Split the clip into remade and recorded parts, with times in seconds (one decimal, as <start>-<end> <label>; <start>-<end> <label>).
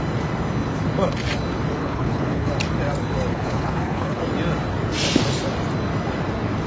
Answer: 0.0-1.8 recorded; 1.8-2.5 remade; 2.5-3.3 recorded; 3.3-4.2 remade; 4.2-6.7 recorded